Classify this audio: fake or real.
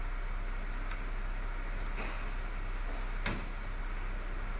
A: real